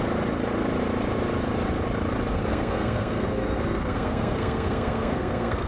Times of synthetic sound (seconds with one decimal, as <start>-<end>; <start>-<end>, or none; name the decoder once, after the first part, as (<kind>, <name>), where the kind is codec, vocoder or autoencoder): 2.3-5.7 (codec, SNAC)